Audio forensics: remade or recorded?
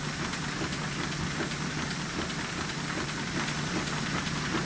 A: recorded